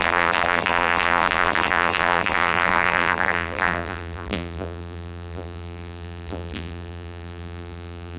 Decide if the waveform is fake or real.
fake